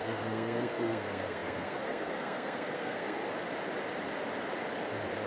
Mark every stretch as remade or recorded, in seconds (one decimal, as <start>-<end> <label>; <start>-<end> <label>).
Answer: 0.0-3.3 remade; 3.3-5.3 recorded

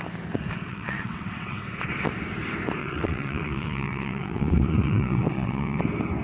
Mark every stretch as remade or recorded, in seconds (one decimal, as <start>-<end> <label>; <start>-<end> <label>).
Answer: 0.0-0.7 recorded; 0.7-1.6 remade; 1.6-2.8 recorded; 2.8-5.8 remade; 5.8-6.2 recorded

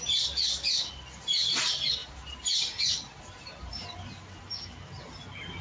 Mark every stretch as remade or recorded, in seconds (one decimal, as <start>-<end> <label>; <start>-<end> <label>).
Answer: 0.0-2.0 recorded; 2.0-4.5 remade; 4.5-5.6 recorded

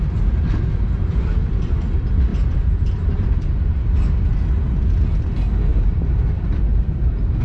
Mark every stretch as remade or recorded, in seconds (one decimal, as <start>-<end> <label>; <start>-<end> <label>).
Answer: 0.0-2.3 recorded; 2.3-3.7 remade; 3.7-5.7 recorded; 5.7-7.4 remade

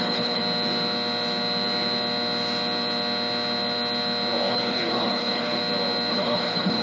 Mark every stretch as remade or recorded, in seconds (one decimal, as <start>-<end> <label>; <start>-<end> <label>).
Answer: 0.0-0.4 remade; 0.4-4.5 recorded; 4.5-5.6 remade; 5.6-6.1 recorded; 6.1-6.8 remade

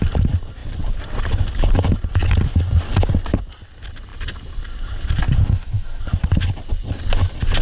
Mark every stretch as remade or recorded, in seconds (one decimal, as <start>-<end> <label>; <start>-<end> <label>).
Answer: 0.0-5.4 recorded; 5.4-6.0 remade; 6.0-7.6 recorded

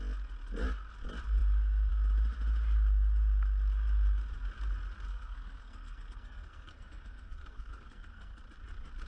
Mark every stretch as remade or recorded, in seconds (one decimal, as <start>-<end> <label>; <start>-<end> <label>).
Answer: 0.0-5.1 recorded; 5.1-8.4 remade; 8.4-9.1 recorded

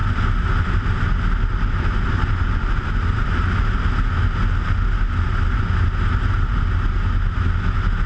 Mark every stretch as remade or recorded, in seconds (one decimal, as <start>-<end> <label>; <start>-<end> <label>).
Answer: 0.0-8.1 recorded